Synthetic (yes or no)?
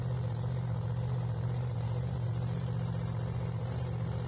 no